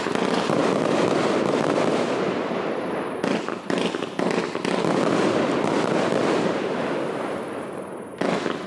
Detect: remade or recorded recorded